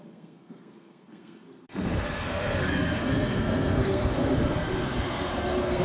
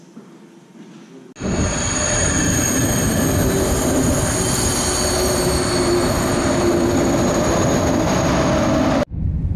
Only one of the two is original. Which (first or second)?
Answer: second